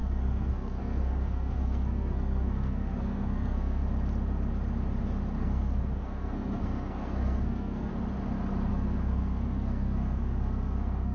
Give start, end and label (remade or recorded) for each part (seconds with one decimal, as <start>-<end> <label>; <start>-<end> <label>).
0.0-3.8 remade; 3.8-5.4 recorded; 5.4-7.9 remade; 7.9-8.7 recorded; 8.7-11.1 remade